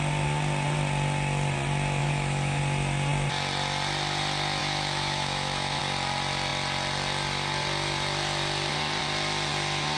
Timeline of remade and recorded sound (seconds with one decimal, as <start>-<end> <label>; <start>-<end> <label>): 0.0-2.0 recorded; 2.0-2.6 remade; 2.6-4.6 recorded; 4.6-5.8 remade; 5.8-10.0 recorded